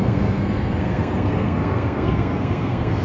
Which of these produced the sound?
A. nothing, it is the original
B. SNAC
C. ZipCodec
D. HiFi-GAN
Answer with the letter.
B